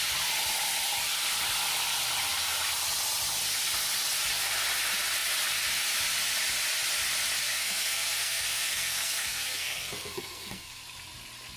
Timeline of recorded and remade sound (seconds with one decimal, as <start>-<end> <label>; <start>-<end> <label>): 0.0-7.4 recorded; 7.4-10.8 remade; 10.8-11.6 recorded